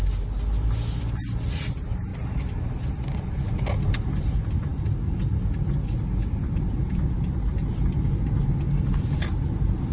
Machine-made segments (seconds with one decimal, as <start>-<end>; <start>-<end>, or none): none